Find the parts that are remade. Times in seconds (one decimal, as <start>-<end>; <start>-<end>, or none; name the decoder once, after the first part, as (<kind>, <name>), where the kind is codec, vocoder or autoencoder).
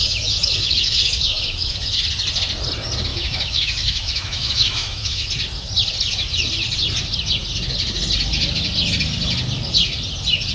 0.0-2.0 (autoencoder, DAC-VAE); 3.1-5.3